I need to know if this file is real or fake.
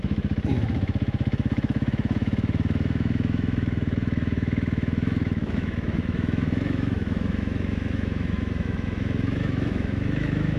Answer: fake